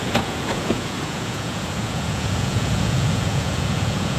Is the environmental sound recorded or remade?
remade